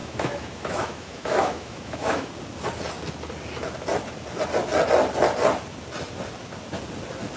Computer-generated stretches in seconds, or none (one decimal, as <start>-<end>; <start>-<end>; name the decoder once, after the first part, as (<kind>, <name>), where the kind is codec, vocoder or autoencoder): 0.0-2.3 (autoencoder, DAC-VAE)